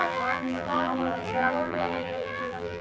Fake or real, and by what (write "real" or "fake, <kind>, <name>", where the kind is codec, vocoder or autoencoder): fake, vocoder, BigVGAN v2